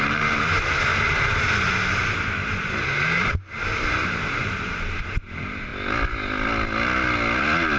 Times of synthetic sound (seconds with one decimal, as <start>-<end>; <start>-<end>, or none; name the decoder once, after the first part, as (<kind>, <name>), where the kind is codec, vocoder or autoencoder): 0.0-0.9 (vocoder, BigVGAN v2); 3.0-5.7

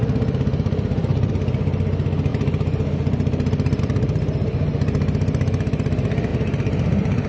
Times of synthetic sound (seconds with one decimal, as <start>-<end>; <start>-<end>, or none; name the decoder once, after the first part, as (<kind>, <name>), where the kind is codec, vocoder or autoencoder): 0.0-1.3 (vocoder, BigVGAN v2); 2.3-3.8; 6.3-7.3

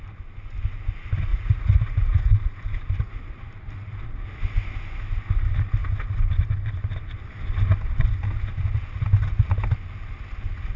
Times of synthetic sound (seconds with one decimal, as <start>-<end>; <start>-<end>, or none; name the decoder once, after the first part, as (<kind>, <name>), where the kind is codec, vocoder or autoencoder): 1.3-2.3 (vocoder, Vocos)

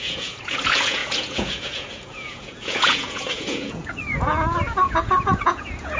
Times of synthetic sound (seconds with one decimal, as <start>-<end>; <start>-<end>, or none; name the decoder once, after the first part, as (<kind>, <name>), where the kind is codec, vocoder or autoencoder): 0.0-6.0 (vocoder, Vocos)

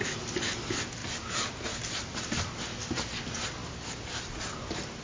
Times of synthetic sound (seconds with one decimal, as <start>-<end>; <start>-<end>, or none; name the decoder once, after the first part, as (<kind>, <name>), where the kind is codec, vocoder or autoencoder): 1.0-2.2 (vocoder, BigVGAN v2); 3.6-5.0